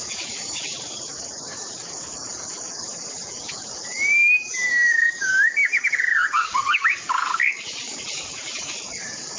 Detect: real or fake fake